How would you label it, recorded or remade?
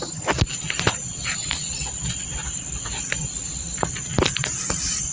remade